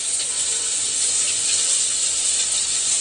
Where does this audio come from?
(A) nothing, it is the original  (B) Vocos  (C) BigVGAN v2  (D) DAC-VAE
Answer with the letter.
B